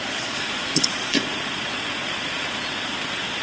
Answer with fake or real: fake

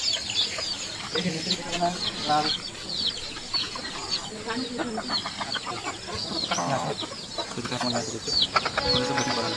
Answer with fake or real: real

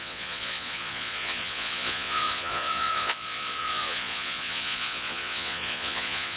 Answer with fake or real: fake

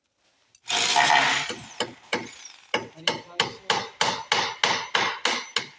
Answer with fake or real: real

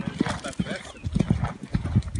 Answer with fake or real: real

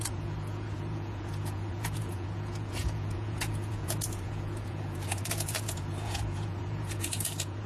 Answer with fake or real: fake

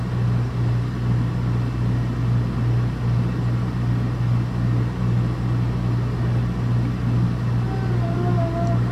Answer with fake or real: real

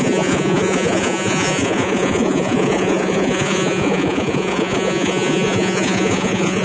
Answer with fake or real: fake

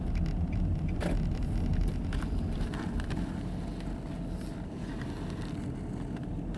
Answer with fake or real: real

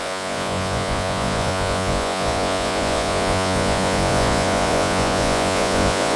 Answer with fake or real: fake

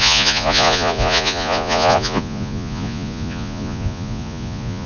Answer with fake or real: fake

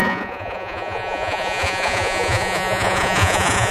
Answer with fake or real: fake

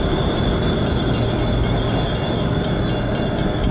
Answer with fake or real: real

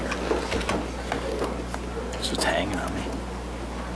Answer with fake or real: real